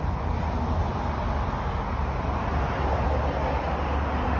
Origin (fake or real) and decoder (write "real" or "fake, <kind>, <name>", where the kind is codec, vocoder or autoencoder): real